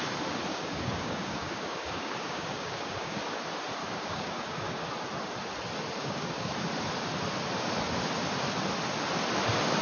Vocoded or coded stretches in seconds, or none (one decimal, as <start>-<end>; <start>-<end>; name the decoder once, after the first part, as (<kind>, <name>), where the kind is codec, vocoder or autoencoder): 0.5-3.2 (codec, DAC); 3.8-4.9; 6.0-6.5